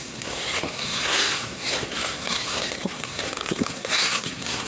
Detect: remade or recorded remade